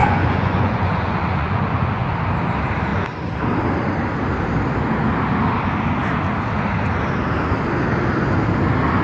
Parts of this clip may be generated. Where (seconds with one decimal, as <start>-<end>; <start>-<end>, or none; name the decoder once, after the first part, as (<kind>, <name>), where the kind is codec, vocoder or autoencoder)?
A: 0.0-2.1 (vocoder, Vocos)